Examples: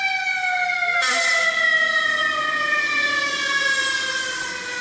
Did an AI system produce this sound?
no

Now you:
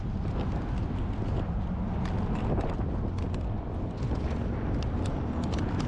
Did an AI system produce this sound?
no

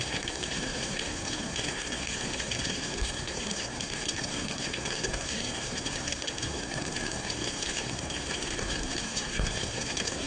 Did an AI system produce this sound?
yes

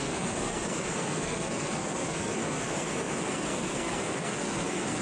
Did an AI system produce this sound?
yes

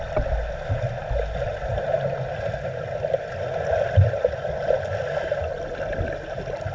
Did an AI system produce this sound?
no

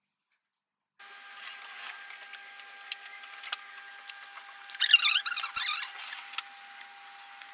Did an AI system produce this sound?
no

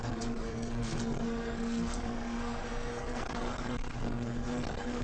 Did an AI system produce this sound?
yes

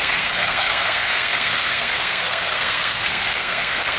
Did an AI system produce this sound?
yes